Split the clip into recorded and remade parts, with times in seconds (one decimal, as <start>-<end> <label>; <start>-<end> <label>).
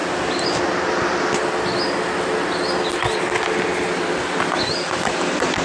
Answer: 0.0-5.6 recorded